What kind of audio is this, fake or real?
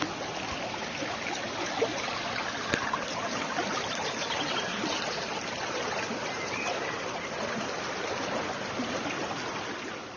real